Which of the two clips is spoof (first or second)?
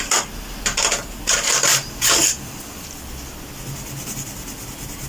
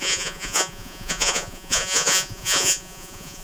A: second